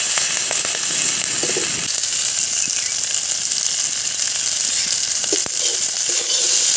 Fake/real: real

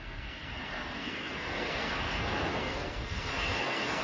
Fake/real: fake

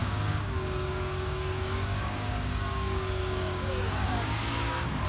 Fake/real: fake